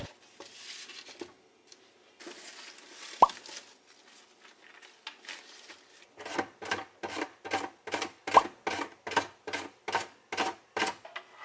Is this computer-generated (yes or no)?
no